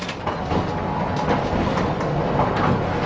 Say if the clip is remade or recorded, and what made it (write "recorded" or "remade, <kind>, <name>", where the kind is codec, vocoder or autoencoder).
recorded